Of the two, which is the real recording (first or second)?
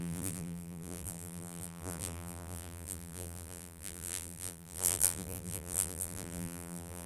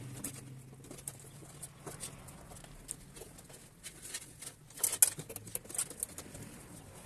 second